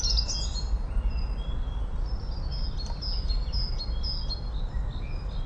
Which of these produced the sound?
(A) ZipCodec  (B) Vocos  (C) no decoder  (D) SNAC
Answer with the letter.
C